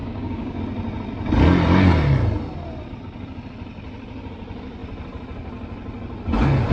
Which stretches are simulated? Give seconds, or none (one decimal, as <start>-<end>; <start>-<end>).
0.0-0.6